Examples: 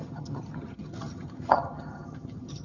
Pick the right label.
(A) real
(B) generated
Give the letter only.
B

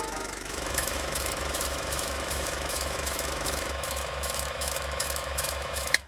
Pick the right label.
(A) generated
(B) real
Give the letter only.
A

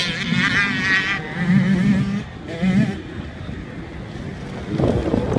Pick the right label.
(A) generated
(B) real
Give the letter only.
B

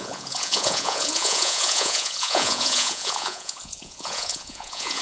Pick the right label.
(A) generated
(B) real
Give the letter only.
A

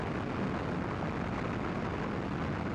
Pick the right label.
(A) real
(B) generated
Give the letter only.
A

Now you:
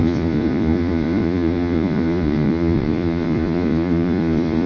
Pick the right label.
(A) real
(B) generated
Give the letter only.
B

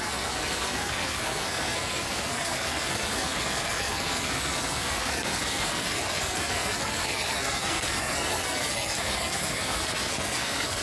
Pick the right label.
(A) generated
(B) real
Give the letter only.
A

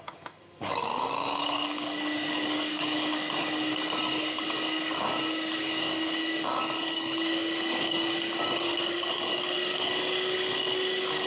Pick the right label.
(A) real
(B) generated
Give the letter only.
B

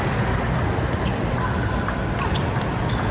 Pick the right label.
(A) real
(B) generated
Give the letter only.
A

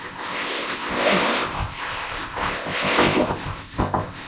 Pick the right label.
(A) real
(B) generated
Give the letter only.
B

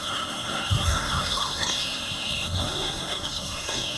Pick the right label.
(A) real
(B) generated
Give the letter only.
B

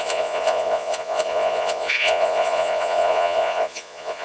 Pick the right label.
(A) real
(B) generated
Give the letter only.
B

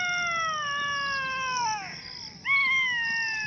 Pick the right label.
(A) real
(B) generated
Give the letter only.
A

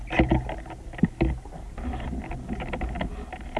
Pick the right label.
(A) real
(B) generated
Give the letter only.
A